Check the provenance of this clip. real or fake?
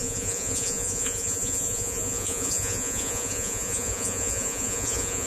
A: fake